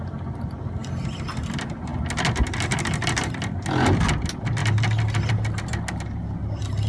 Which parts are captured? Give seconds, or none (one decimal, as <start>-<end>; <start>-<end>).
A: 0.0-6.9